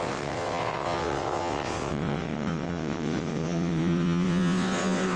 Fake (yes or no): yes